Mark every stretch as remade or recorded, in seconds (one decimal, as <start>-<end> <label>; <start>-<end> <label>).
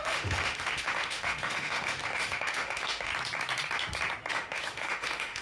0.0-3.1 remade; 3.1-4.3 recorded; 4.3-5.4 remade